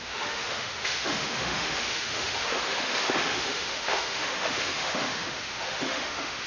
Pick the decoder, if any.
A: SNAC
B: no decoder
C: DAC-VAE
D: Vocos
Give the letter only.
C